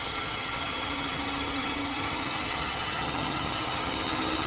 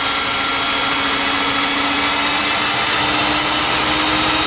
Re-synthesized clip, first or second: first